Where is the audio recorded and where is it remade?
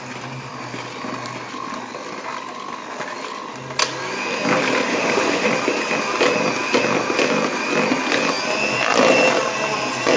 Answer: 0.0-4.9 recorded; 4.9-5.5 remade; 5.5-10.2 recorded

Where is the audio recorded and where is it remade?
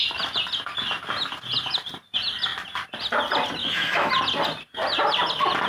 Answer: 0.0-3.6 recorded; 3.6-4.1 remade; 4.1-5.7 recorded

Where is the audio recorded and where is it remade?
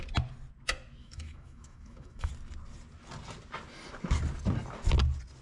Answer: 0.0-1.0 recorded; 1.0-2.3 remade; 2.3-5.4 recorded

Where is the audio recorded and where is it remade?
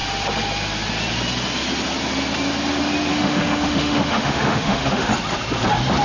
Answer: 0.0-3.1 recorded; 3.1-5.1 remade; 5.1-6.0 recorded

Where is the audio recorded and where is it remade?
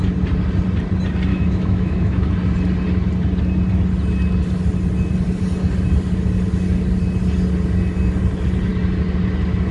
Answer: 0.0-1.3 recorded; 1.3-2.3 remade; 2.3-9.7 recorded